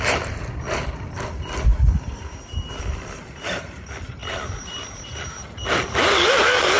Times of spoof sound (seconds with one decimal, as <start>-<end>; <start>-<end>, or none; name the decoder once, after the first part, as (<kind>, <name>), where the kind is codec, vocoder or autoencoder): 0.0-1.7 (vocoder, BigVGAN v2); 2.8-6.8